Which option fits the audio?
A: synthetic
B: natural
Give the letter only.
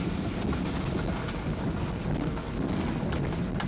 B